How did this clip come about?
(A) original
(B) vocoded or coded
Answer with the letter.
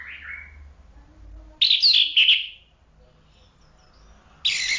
A